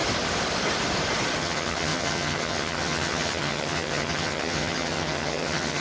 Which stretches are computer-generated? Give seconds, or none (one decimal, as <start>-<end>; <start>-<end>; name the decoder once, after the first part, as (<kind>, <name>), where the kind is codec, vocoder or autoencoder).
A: 1.4-5.8 (vocoder, HiFi-GAN)